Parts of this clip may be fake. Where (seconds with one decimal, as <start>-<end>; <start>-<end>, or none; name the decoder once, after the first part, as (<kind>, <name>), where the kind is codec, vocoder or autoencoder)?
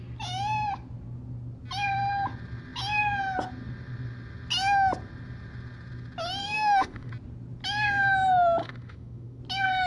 6.4-7.1 (autoencoder, DAC-VAE); 8.6-9.4